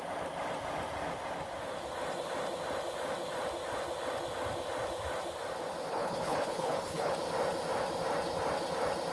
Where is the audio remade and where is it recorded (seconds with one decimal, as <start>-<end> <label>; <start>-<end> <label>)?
0.0-5.9 recorded; 5.9-7.1 remade; 7.1-9.1 recorded